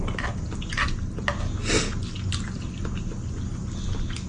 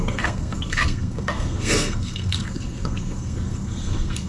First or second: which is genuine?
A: first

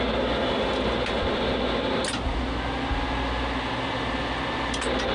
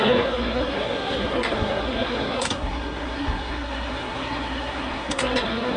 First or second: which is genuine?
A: first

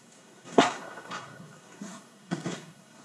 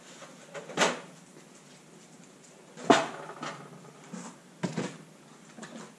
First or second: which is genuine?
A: second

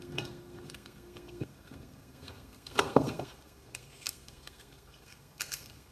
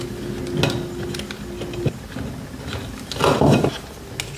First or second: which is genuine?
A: second